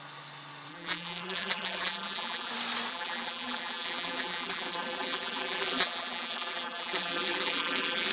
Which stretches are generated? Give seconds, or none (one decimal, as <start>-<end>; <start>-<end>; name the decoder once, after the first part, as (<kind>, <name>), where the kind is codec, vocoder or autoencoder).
0.7-2.5 (vocoder, BigVGAN v2); 2.9-8.1